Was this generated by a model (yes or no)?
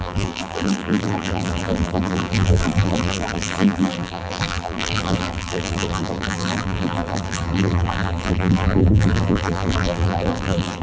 yes